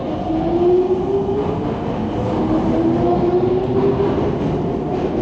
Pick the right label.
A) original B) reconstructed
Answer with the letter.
A